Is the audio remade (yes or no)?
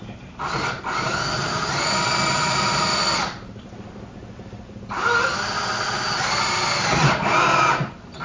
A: no